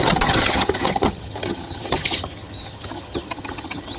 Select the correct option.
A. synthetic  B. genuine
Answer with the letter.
A